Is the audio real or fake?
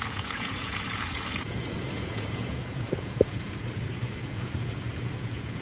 fake